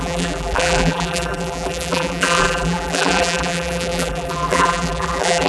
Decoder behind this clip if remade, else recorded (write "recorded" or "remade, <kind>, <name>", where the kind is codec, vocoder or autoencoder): remade, vocoder, BigVGAN v2